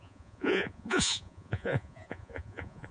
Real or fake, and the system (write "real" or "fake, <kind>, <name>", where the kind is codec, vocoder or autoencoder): fake, vocoder, Vocos